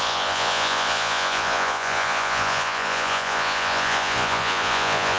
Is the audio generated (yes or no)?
yes